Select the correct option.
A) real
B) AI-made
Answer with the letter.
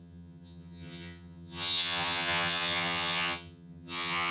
B